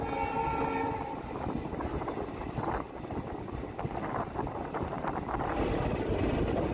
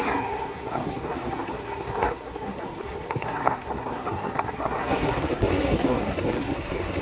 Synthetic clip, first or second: second